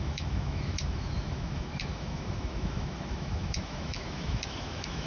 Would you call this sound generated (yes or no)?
yes